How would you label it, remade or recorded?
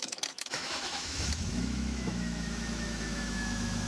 remade